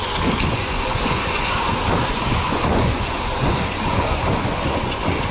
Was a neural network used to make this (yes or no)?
yes